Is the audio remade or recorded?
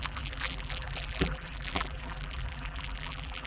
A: remade